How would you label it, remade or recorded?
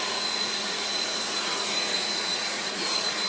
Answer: remade